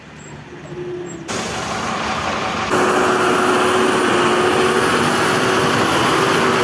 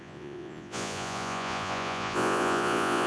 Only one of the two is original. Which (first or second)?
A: first